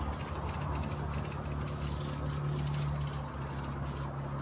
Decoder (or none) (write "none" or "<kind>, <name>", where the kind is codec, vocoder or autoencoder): none